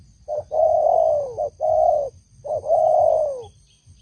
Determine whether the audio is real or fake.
real